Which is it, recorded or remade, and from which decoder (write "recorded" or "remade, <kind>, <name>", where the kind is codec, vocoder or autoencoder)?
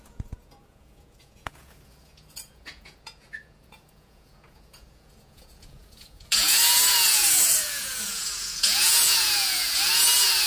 remade, vocoder, Vocos